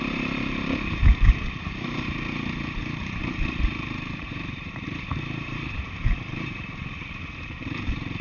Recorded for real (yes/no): no